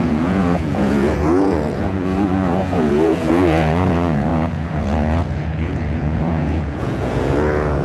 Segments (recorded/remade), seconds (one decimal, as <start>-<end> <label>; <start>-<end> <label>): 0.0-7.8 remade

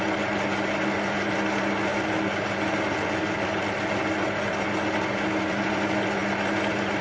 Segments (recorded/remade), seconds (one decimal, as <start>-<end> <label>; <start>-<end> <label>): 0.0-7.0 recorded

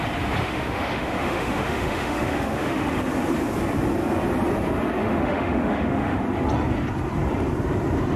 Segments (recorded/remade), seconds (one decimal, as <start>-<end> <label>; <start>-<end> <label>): 0.0-0.4 recorded; 0.4-2.9 remade; 2.9-5.0 recorded; 5.0-6.2 remade; 6.2-8.2 recorded